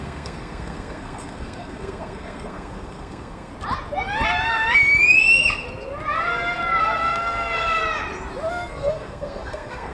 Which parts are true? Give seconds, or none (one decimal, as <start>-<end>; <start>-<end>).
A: 3.5-6.8; 7.8-8.5